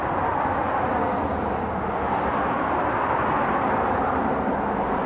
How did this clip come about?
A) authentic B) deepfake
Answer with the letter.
A